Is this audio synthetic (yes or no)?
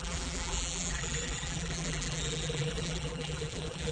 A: yes